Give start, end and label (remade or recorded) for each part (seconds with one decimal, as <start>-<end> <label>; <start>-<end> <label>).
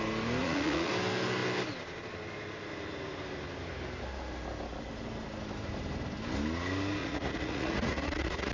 0.0-0.4 recorded; 0.4-0.9 remade; 0.9-7.0 recorded; 7.0-8.5 remade